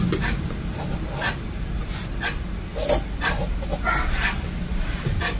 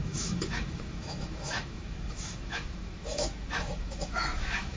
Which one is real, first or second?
first